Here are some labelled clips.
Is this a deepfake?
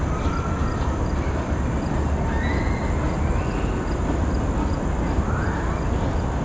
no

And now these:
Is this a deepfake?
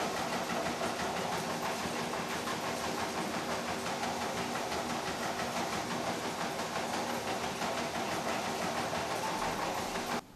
no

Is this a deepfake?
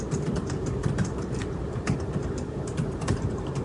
yes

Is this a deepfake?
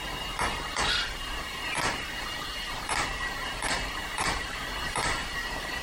yes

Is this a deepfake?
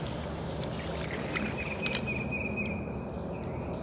no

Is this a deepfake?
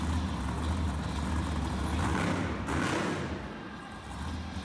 no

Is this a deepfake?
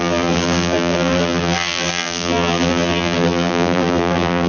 yes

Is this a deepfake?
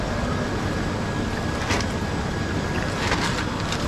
no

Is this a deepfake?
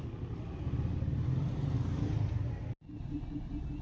no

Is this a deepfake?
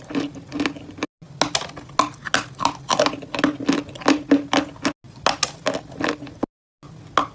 no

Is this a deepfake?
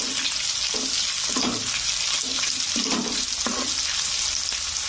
no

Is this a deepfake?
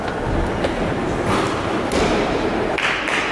no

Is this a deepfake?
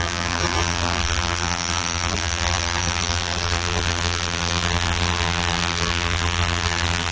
yes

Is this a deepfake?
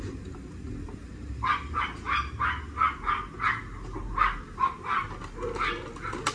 no